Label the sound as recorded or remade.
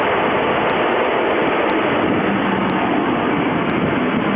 recorded